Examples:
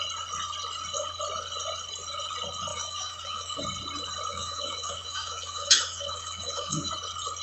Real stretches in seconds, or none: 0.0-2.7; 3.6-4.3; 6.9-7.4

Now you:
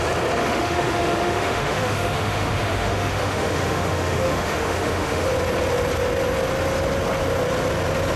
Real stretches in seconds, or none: 0.0-0.4; 5.3-8.2

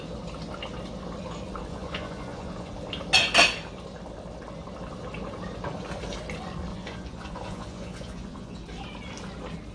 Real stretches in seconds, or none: 0.0-1.7; 2.7-6.7; 8.6-9.7

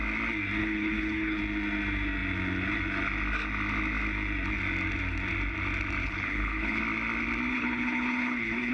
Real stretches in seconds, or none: 0.0-0.6; 1.4-6.0; 6.8-7.5

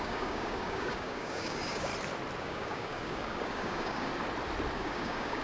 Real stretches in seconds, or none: 1.9-2.4; 4.1-4.7

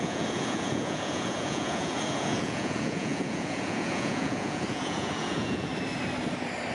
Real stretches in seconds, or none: 5.7-6.7

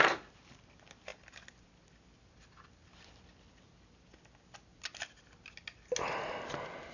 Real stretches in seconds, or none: 0.0-6.9

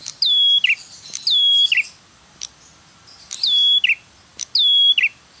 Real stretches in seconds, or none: 0.0-5.4